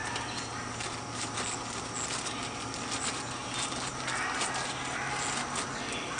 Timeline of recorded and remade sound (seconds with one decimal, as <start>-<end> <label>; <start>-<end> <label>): 0.0-6.2 recorded